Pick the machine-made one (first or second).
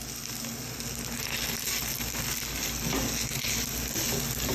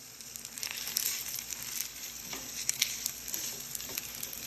second